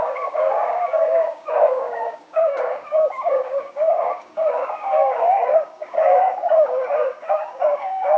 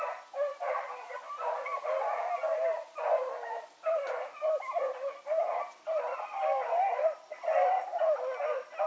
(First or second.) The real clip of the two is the second